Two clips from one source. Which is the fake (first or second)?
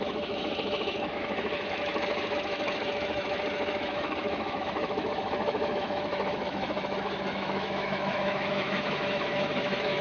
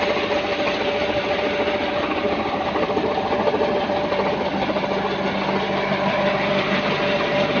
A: first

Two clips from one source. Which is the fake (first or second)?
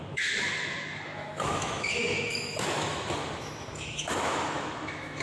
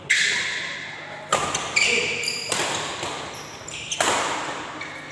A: first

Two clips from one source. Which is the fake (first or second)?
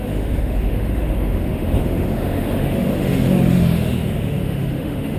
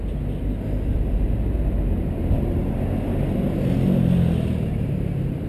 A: first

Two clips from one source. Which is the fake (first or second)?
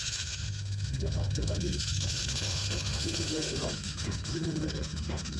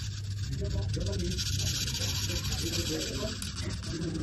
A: first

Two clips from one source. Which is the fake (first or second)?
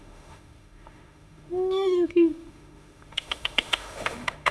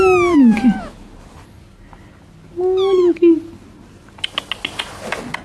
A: first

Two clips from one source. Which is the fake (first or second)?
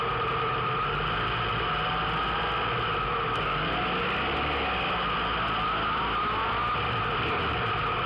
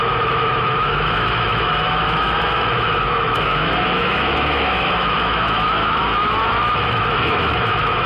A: second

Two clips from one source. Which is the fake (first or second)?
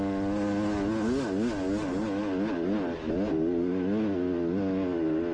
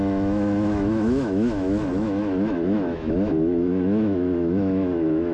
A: second